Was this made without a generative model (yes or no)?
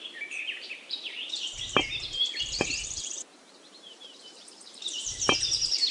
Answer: no